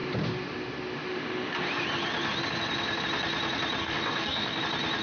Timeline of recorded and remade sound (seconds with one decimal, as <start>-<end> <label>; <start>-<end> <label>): 0.0-3.8 recorded; 3.8-4.6 remade; 4.6-5.0 recorded